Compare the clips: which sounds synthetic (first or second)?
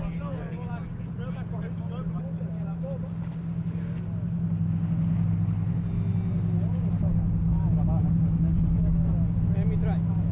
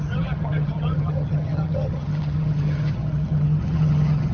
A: second